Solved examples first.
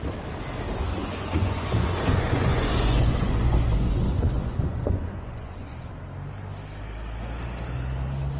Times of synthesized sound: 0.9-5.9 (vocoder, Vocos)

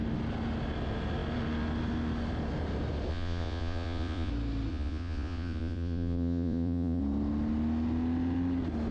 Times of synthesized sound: 3.1-4.3 (vocoder, Vocos); 4.7-7.0

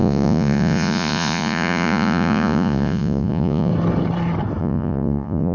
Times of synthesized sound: 0.0-3.7 (vocoder, Vocos); 4.6-5.5

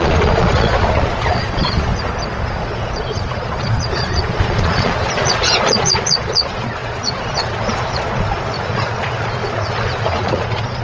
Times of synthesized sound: 0.0-1.9 (vocoder, Vocos); 2.4-10.8

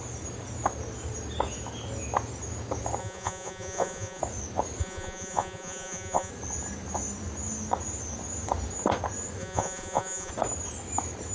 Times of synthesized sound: 3.0-4.2 (vocoder, Vocos); 4.8-6.3; 9.4-10.3

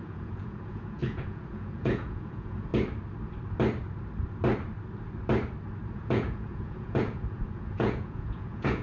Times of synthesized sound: 0.0-2.7 (vocoder, Vocos); 5.9-8.8

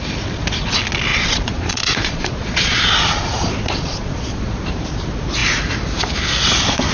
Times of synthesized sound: 1.1-4.6 (vocoder, Vocos)